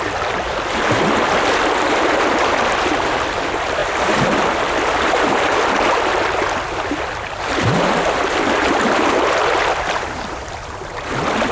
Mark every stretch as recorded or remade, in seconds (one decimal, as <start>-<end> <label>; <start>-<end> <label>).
0.0-11.5 recorded